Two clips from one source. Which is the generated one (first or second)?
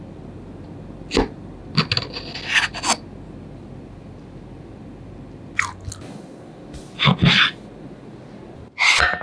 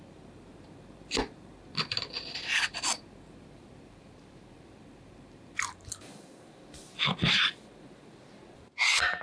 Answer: second